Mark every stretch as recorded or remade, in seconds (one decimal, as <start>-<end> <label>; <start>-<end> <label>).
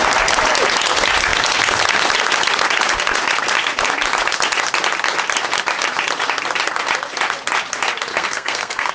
0.0-8.1 recorded; 8.1-8.9 remade